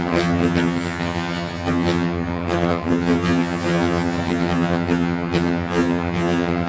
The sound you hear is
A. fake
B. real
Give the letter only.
A